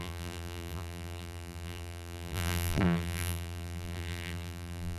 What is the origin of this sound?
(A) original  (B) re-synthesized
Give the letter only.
B